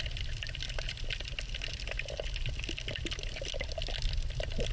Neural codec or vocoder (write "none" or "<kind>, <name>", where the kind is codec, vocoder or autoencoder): none